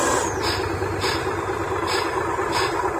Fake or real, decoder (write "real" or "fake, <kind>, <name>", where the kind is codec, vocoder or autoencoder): real